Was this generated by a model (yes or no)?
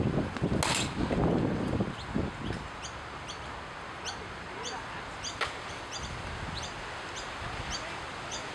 no